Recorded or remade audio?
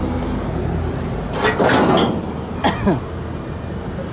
recorded